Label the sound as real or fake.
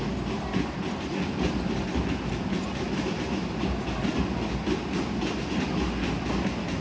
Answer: real